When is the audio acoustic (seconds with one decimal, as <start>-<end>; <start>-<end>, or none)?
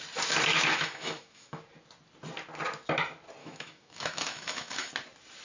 0.0-0.5; 1.6-3.4; 4.9-5.4